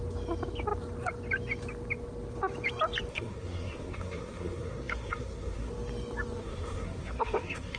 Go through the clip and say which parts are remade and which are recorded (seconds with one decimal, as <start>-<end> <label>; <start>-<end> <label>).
0.0-3.1 recorded; 3.1-5.7 remade; 5.7-6.4 recorded; 6.4-7.8 remade